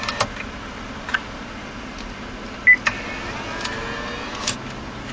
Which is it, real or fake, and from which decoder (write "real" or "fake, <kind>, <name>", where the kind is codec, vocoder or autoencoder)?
real